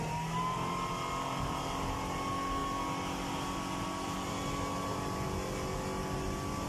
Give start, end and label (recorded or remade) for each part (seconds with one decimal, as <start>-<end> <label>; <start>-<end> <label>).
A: 0.0-6.7 recorded